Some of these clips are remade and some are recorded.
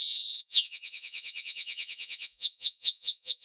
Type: remade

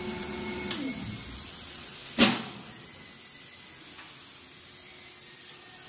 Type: recorded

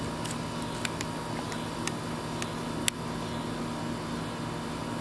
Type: recorded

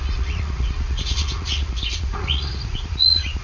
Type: remade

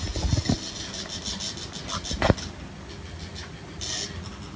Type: recorded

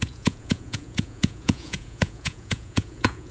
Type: remade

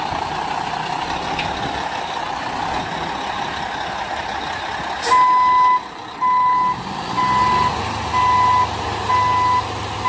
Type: recorded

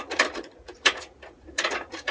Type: remade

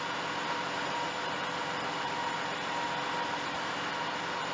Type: recorded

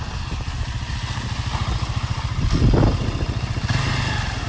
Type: recorded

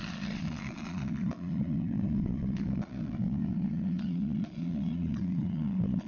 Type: remade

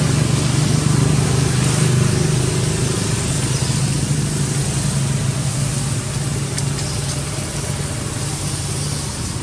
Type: recorded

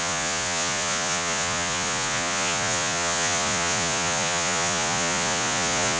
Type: remade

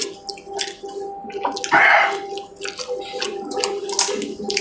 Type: recorded